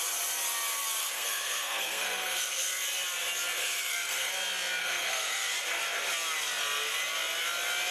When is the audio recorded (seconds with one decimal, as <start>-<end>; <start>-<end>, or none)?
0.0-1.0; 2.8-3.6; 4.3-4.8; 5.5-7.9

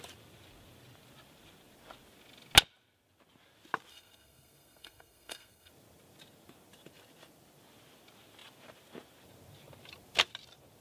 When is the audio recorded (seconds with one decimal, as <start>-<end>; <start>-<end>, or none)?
0.0-3.9; 5.7-10.8

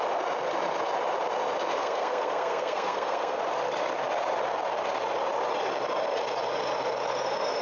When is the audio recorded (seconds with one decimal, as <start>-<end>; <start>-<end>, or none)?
0.0-1.8; 3.4-7.6

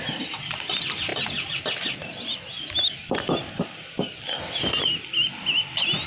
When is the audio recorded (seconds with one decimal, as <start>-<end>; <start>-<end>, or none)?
0.0-6.1

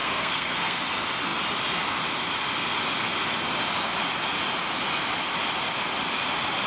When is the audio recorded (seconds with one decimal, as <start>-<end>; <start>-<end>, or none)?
0.8-6.7

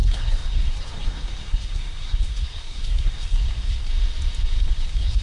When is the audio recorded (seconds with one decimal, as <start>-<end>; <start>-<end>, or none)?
3.9-4.6

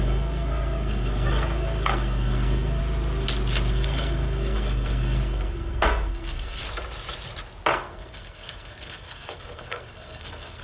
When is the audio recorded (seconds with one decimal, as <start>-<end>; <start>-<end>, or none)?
2.8-3.7; 6.6-7.7